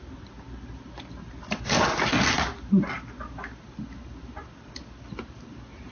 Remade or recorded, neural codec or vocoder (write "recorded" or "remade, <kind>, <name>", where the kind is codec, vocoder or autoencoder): recorded